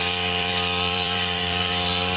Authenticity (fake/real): fake